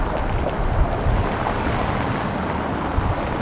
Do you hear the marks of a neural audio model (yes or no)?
no